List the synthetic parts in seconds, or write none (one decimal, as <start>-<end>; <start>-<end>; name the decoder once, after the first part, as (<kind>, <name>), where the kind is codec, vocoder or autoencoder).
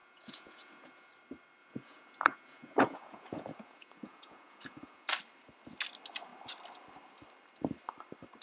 0.0-1.1 (vocoder, Vocos); 1.6-5.1